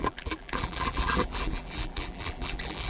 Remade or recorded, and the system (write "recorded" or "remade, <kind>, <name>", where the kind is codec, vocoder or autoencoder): remade, vocoder, BigVGAN v2